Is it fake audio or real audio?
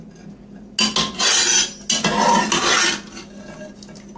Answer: real